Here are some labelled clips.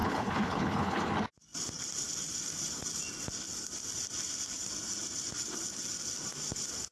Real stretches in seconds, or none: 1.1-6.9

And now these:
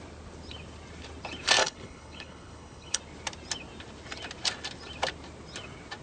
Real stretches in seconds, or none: 0.0-1.6; 3.0-6.0

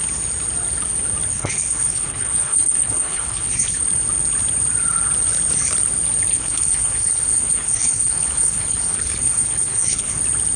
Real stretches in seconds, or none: 0.0-1.3; 3.8-6.3; 10.2-10.6

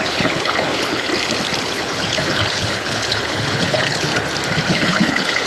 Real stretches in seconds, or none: 1.1-1.6; 4.1-4.7